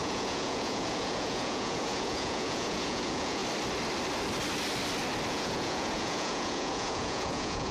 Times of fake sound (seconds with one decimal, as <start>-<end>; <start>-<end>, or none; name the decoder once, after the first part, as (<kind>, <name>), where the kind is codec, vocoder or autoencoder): 0.0-3.4 (vocoder, Vocos); 5.3-7.7